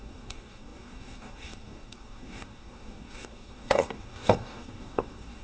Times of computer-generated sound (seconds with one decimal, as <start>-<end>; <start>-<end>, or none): 0.0-5.4